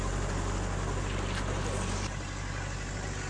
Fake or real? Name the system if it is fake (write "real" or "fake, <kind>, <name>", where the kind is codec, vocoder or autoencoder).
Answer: real